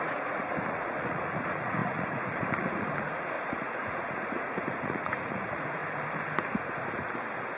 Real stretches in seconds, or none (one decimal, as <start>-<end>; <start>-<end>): 5.8-7.6